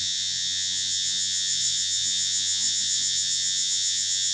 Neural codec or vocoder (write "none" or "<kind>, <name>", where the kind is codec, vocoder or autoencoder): vocoder, Vocos